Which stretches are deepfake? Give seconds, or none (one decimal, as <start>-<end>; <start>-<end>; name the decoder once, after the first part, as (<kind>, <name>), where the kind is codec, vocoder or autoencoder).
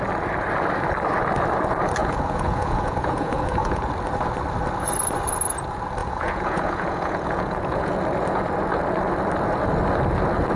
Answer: 2.0-3.9 (vocoder, Vocos); 6.0-7.9